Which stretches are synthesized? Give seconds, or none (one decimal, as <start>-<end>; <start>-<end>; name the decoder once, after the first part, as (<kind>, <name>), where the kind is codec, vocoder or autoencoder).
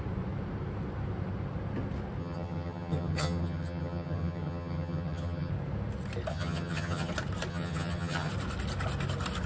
2.2-5.5 (vocoder, HiFi-GAN); 6.3-7.1; 7.5-8.3